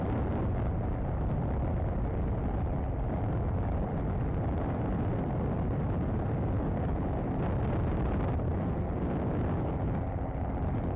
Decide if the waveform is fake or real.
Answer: real